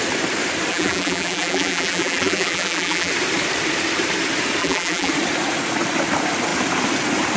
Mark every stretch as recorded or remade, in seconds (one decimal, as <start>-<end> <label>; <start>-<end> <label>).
0.0-0.7 recorded; 0.7-3.1 remade; 3.1-4.6 recorded; 4.6-5.1 remade; 5.1-7.4 recorded